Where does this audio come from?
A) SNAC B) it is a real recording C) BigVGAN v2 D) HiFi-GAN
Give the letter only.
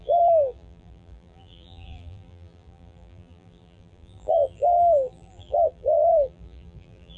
C